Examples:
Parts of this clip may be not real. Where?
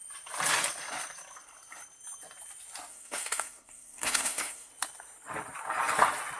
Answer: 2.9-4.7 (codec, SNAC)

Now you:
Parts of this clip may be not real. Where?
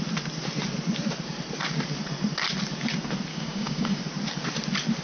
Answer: 3.3-4.0 (codec, DAC)